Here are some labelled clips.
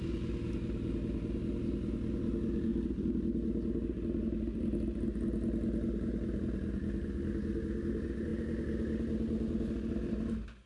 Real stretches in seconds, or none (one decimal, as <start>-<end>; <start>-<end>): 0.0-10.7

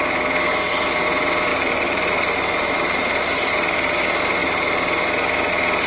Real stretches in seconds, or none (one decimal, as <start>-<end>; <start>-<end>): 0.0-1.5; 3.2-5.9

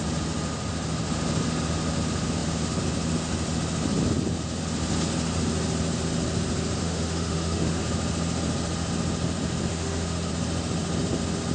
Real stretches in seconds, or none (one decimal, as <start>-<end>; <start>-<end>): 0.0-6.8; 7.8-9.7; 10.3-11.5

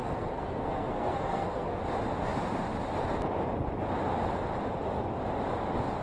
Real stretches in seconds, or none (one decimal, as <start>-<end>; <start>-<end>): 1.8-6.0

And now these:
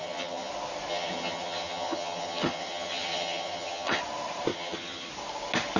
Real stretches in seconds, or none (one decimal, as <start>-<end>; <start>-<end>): 0.5-0.9; 4.0-4.5; 5.1-5.8

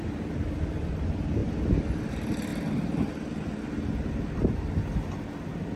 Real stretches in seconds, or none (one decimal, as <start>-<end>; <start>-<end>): 0.0-5.8